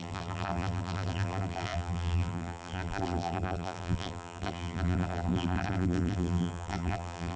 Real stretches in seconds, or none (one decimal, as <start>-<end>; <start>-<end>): none